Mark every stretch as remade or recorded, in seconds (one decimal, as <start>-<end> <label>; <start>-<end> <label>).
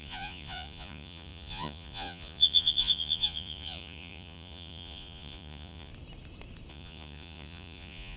0.0-5.9 remade; 5.9-6.7 recorded; 6.7-8.2 remade